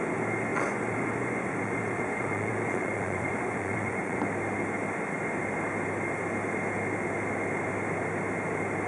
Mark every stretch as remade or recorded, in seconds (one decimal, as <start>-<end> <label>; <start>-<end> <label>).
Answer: 0.0-0.5 recorded; 0.5-4.2 remade; 4.2-8.9 recorded